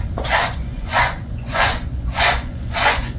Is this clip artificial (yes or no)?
yes